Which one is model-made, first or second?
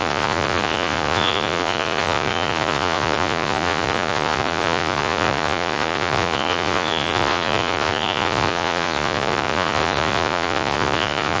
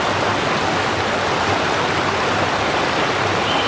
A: first